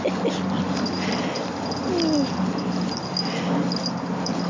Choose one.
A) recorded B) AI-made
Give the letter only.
A